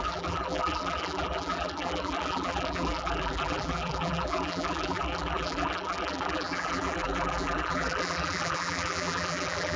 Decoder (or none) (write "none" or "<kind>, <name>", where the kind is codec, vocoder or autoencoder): vocoder, BigVGAN v2